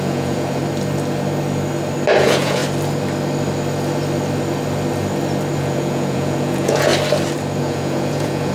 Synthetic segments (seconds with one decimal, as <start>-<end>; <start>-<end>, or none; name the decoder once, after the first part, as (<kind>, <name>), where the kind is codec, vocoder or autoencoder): 0.0-0.6 (vocoder, Vocos); 2.2-2.6; 5.6-6.9; 7.6-8.5